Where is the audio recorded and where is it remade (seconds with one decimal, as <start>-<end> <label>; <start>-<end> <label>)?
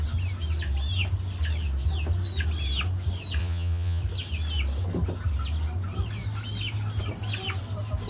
0.0-3.4 recorded; 3.4-4.0 remade; 4.0-8.1 recorded